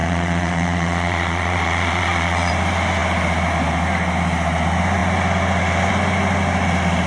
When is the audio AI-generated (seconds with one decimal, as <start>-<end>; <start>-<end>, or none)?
0.0-2.5